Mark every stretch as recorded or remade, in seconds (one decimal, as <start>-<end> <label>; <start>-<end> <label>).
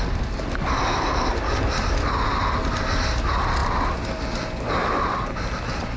0.0-6.0 recorded